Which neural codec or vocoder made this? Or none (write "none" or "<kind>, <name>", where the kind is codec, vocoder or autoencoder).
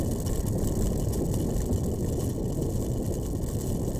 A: none